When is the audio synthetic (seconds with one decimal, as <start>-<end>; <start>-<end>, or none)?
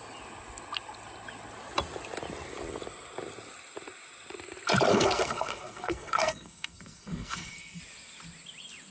4.9-7.8